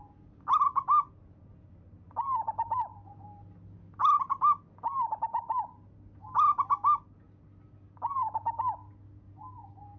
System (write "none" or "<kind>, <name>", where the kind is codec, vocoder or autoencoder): none